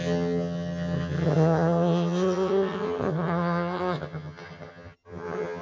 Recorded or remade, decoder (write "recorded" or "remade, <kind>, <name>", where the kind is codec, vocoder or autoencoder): remade, vocoder, HiFi-GAN